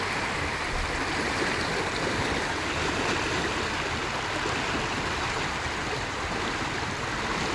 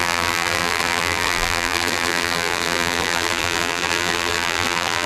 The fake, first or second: second